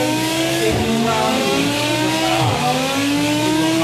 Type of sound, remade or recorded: remade